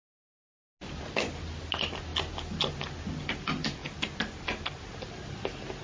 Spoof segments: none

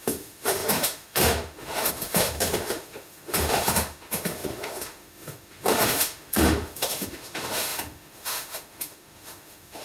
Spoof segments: 0.0-9.8 (autoencoder, DAC-VAE)

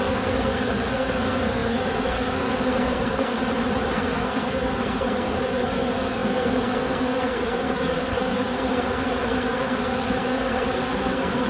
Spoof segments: 0.0-3.4 (codec, SNAC); 3.9-11.5

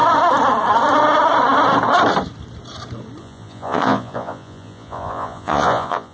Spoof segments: 3.2-6.1 (vocoder, Vocos)